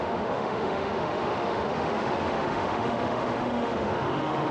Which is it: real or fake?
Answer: fake